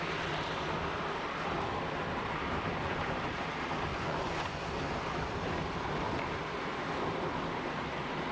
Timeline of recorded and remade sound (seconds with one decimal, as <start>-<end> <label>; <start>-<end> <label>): 0.0-2.7 recorded; 2.7-3.3 remade; 3.3-3.9 recorded; 3.9-4.6 remade; 4.6-8.3 recorded